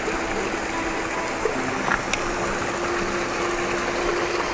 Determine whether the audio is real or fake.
real